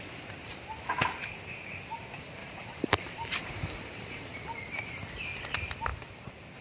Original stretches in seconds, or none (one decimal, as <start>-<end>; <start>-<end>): 0.0-2.4; 4.7-6.6